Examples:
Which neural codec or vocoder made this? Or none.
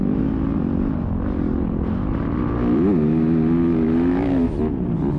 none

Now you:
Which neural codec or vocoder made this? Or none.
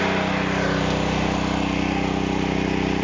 none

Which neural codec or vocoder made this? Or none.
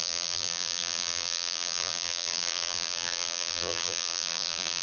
vocoder, BigVGAN v2